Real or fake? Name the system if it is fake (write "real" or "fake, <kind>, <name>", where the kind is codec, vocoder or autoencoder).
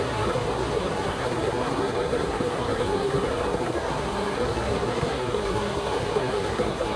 fake, codec, SNAC